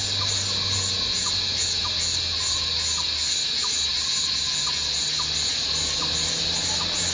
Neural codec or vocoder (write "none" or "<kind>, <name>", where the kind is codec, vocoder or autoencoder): none